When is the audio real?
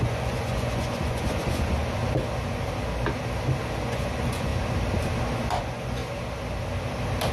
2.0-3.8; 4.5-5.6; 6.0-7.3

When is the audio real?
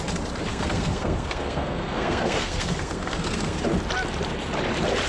0.0-0.5; 3.6-5.1